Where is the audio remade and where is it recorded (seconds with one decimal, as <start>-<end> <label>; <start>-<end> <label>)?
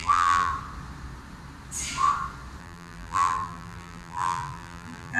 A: 0.0-0.5 remade; 0.5-2.6 recorded; 2.6-5.2 remade